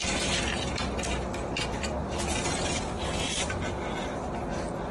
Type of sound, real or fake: real